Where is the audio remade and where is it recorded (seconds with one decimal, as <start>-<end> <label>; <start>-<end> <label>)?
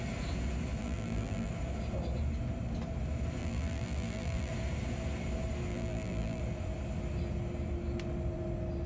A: 0.0-0.8 recorded; 0.8-1.5 remade; 1.5-3.4 recorded; 3.4-4.5 remade; 4.5-5.7 recorded; 5.7-6.4 remade; 6.4-8.9 recorded